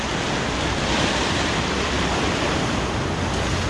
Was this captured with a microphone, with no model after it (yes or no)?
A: yes